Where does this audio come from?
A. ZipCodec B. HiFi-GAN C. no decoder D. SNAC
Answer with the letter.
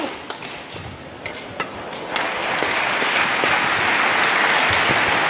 C